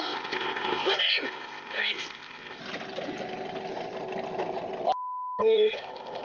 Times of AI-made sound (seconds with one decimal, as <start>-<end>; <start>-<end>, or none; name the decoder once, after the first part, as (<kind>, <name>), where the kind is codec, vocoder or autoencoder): 0.0-2.6 (codec, ZipCodec); 5.4-6.2